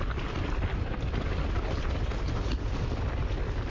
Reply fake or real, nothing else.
real